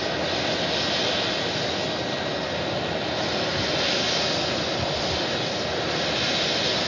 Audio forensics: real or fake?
real